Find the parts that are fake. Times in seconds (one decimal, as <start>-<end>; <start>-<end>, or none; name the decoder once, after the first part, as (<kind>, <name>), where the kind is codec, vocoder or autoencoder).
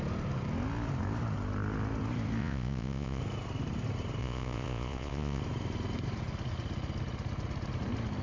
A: 2.4-3.2 (vocoder, Vocos); 4.2-5.4